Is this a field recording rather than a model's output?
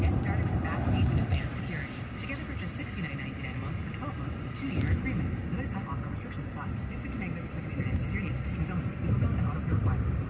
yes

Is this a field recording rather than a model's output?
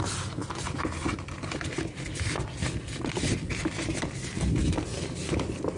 yes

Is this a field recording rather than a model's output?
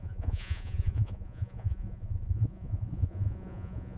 no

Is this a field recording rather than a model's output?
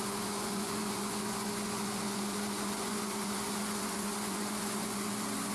no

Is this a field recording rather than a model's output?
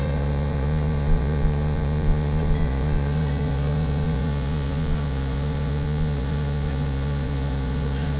no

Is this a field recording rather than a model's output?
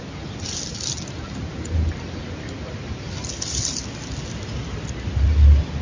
yes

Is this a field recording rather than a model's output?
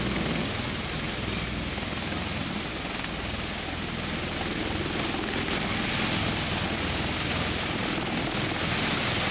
yes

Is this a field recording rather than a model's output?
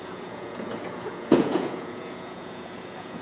no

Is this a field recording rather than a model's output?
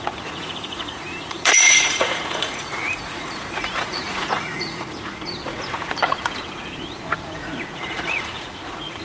no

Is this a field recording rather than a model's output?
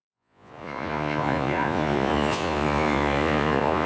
no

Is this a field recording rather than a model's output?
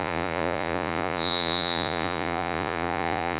no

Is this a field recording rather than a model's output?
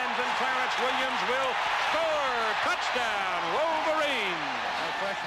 yes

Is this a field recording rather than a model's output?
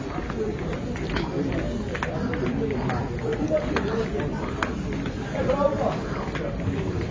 yes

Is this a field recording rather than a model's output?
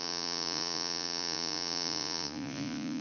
no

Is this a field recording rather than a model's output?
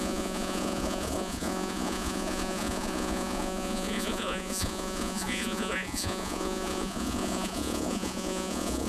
no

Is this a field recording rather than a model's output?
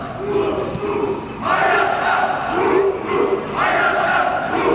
yes